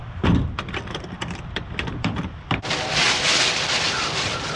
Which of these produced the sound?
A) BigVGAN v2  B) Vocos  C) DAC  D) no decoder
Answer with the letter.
A